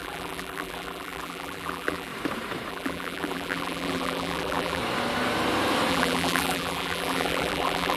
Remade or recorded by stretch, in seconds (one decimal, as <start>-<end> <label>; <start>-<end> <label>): 0.0-2.1 remade; 2.1-2.7 recorded; 2.7-4.8 remade; 4.8-5.9 recorded; 5.9-8.0 remade